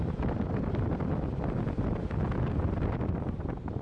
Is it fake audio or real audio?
real